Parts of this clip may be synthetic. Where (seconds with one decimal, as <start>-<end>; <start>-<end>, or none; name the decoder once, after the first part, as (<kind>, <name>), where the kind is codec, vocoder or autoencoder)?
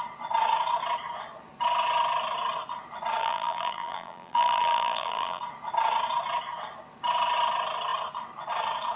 3.2-5.4 (vocoder, BigVGAN v2)